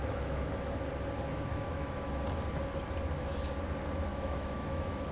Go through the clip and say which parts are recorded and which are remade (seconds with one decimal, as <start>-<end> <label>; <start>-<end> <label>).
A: 0.0-0.5 remade; 0.5-1.5 recorded; 1.5-2.3 remade; 2.3-4.1 recorded; 4.1-5.1 remade